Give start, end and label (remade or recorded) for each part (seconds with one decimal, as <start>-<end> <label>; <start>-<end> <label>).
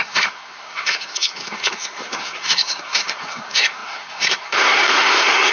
0.0-5.5 remade